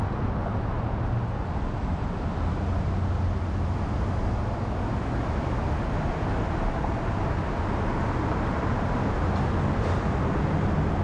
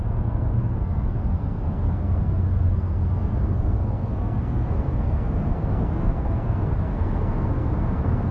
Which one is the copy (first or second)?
second